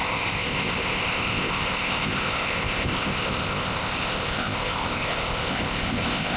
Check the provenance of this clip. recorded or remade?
remade